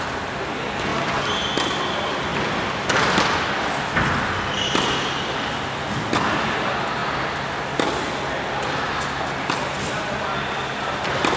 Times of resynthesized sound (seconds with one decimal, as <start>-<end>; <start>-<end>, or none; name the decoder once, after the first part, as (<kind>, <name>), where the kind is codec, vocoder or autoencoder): 0.9-1.5 (vocoder, BigVGAN v2)

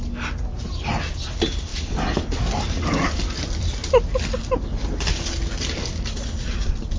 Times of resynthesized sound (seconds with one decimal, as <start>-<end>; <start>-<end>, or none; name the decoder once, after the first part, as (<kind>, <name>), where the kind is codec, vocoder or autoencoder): none

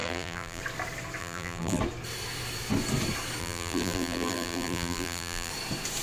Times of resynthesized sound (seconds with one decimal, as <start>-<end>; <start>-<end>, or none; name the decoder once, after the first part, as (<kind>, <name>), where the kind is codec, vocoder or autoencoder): 0.0-0.6 (vocoder, BigVGAN v2); 1.2-1.8; 3.4-5.5

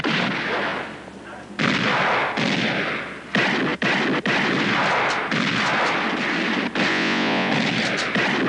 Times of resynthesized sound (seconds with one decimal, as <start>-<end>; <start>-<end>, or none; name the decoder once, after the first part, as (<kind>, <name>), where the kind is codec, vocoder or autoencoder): 6.9-7.5 (vocoder, Vocos)

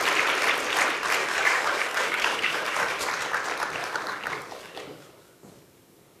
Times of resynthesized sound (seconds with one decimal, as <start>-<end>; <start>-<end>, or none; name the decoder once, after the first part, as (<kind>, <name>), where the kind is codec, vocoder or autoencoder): 1.2-3.1 (codec, DAC); 3.8-6.2